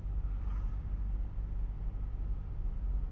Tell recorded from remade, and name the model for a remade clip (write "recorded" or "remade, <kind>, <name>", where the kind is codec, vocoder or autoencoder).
recorded